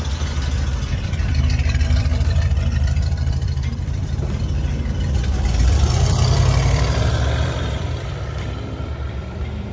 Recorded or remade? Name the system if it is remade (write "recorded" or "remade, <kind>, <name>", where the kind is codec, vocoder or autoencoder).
remade, vocoder, BigVGAN v2